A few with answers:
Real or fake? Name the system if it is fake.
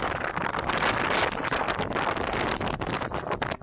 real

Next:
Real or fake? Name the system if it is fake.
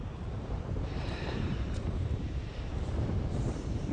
fake, vocoder, BigVGAN v2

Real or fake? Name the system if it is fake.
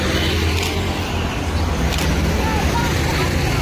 real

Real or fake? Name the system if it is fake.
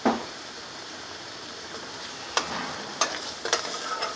real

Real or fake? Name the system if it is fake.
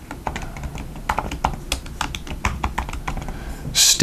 real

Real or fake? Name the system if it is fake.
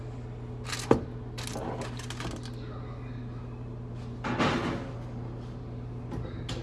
real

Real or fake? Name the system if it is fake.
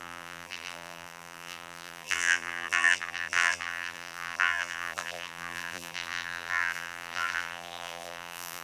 fake, vocoder, BigVGAN v2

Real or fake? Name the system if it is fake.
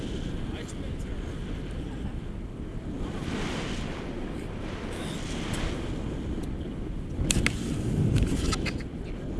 real